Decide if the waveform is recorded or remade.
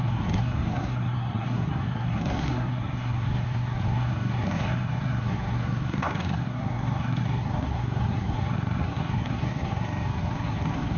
remade